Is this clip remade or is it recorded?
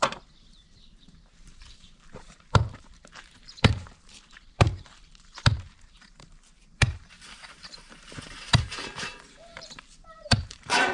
remade